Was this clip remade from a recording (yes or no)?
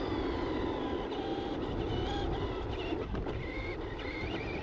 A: no